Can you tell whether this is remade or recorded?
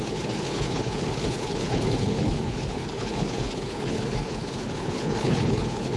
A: remade